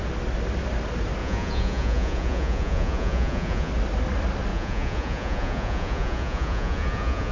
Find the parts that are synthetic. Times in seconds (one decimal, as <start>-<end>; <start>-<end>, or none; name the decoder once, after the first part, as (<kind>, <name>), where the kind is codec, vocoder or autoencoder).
1.2-3.7 (vocoder, Vocos); 4.5-7.3